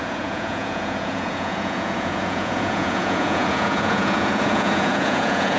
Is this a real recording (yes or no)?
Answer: no